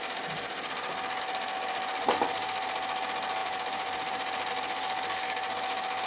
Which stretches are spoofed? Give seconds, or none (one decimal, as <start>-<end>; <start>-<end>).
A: 3.4-4.5